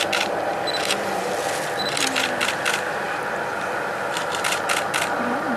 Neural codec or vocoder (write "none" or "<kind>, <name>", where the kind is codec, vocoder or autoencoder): none